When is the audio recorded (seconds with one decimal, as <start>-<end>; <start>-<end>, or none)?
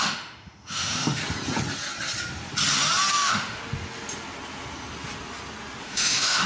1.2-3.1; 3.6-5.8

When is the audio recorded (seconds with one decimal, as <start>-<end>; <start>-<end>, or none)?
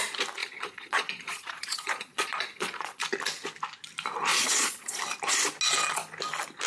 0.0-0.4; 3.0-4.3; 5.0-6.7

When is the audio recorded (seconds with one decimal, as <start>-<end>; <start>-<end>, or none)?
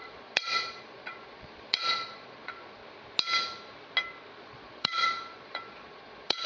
2.8-4.4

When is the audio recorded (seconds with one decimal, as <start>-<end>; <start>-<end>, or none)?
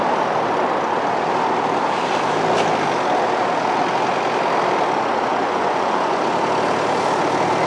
0.0-5.4; 6.2-7.7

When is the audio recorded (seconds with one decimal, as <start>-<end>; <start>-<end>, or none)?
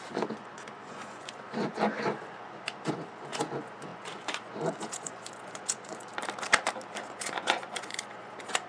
6.1-7.0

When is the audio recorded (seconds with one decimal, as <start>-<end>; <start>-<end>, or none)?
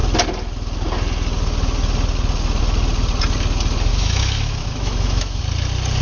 0.0-3.9; 5.4-6.0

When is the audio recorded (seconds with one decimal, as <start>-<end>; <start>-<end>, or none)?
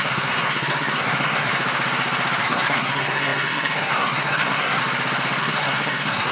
1.5-2.4; 4.8-5.4